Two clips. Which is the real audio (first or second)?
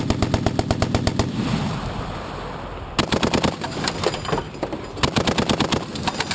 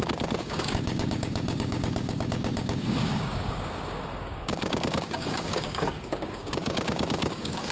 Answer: first